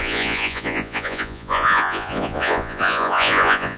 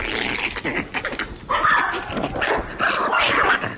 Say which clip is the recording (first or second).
second